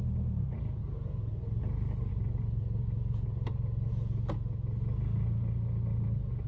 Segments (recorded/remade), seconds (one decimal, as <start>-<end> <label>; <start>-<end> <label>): 0.0-2.1 recorded; 2.1-3.9 remade; 3.9-6.5 recorded